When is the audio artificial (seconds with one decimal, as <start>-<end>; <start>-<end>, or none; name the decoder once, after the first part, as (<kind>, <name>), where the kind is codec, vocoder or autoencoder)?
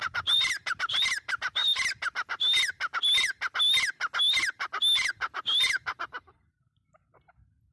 0.0-1.0 (vocoder, BigVGAN v2)